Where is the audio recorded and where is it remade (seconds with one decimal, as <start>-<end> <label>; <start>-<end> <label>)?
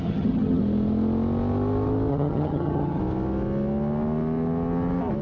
0.0-0.6 remade; 0.6-2.1 recorded; 2.1-3.0 remade; 3.0-5.2 recorded